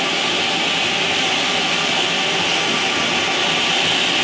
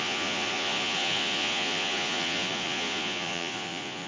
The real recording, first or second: first